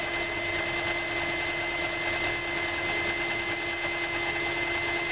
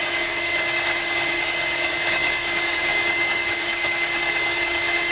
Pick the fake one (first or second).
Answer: second